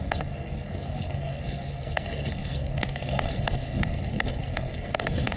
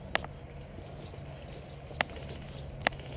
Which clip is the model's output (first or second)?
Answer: first